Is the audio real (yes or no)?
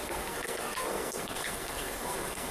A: no